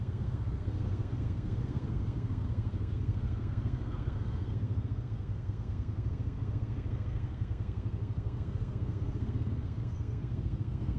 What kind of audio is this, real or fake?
fake